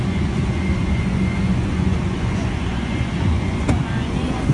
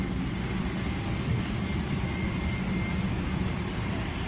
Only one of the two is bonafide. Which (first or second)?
second